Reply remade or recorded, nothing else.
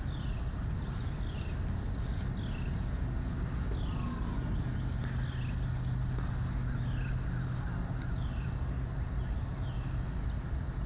recorded